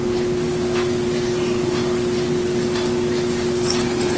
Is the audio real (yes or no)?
yes